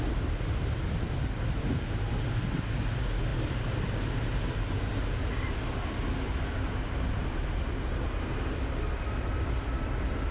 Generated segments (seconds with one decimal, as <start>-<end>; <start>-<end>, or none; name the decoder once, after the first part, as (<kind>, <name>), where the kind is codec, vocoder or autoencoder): none

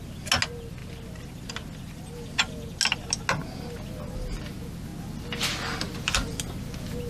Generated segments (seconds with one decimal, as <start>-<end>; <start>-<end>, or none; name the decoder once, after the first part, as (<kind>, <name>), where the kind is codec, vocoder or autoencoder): none

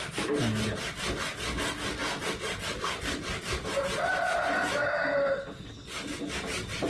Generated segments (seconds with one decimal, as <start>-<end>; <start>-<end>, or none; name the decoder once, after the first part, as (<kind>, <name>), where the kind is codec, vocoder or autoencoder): none

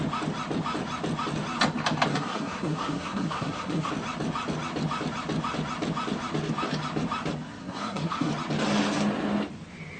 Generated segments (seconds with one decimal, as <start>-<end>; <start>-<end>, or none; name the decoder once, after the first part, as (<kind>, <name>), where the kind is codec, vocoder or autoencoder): 2.1-3.9 (codec, SNAC); 7.6-8.3

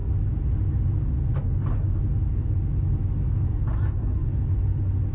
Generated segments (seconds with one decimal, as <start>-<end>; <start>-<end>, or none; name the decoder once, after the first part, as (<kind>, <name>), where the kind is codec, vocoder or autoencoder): none

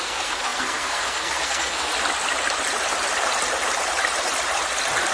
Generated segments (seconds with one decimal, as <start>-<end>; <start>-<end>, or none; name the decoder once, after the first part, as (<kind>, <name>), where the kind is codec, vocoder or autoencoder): 0.0-1.9 (codec, SNAC)